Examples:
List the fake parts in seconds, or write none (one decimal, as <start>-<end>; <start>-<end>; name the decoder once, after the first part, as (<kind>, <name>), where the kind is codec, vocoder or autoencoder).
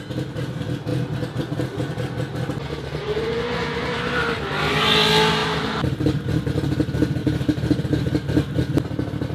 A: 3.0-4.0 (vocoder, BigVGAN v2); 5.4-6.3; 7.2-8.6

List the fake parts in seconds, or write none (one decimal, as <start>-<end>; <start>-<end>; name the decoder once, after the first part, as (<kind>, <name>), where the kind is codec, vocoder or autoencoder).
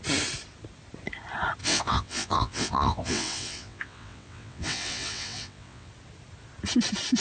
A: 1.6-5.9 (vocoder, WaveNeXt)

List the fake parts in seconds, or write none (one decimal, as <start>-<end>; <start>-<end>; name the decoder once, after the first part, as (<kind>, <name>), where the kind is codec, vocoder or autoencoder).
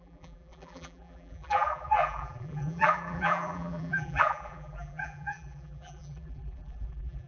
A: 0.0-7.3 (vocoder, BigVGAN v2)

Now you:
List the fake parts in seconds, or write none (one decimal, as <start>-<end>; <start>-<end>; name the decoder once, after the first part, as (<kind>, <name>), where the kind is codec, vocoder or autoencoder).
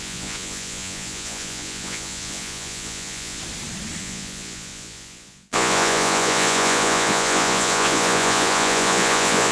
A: 0.0-3.4 (vocoder, Vocos); 4.0-9.5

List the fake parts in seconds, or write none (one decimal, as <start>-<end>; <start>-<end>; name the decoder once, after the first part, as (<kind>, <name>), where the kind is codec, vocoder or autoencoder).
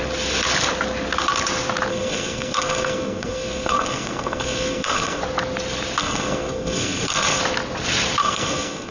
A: 1.9-5.2 (codec, SNAC); 6.0-7.4; 8.2-8.9